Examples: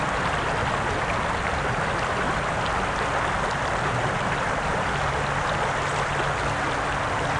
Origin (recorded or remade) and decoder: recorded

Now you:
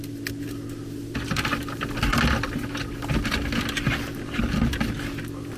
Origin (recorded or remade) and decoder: recorded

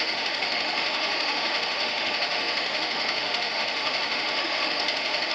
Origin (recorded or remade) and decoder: remade, autoencoder, DAC-VAE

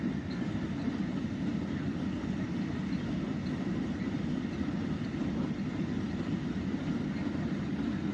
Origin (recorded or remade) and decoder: recorded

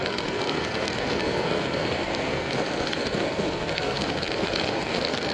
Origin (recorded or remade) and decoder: remade, codec, SNAC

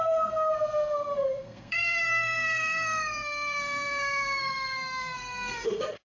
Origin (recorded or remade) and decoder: remade, codec, SNAC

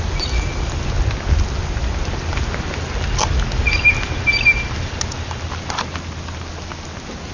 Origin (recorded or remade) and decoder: recorded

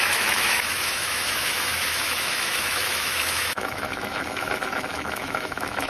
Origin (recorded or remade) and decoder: remade, autoencoder, DAC-VAE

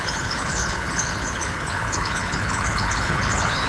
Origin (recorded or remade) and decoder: remade, codec, HILCodec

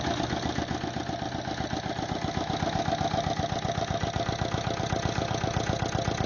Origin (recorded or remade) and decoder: recorded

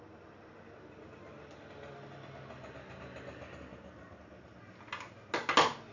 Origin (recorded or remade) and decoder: recorded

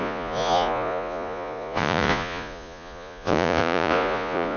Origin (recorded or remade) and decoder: remade, vocoder, Vocos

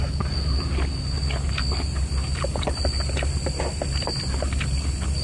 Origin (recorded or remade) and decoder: recorded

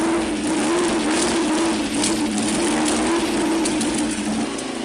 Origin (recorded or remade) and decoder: recorded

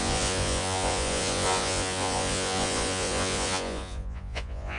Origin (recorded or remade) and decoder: remade, vocoder, Vocos